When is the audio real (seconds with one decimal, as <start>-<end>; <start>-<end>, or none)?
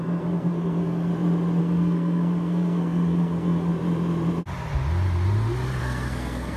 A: 1.1-1.6; 3.7-5.8